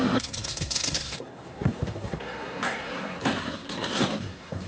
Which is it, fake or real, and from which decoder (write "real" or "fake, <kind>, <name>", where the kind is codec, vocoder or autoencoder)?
fake, codec, SNAC